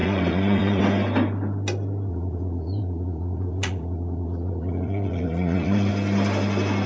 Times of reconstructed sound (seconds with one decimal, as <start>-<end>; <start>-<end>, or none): 0.0-0.8; 2.1-5.9